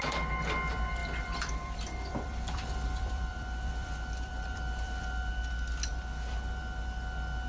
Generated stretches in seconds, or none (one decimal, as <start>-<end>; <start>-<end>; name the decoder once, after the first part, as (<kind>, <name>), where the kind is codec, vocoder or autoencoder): 1.0-5.3 (vocoder, BigVGAN v2)